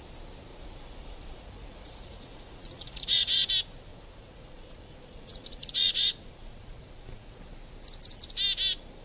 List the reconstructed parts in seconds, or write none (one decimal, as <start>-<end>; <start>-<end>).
0.5-3.5; 3.9-7.4